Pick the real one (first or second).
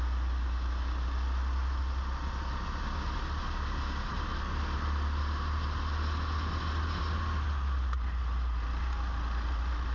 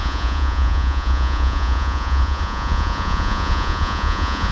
first